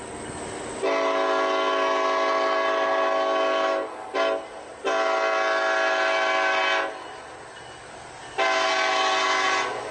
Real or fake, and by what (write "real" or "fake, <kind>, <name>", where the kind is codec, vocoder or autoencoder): real